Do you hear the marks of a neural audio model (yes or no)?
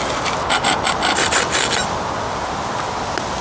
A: no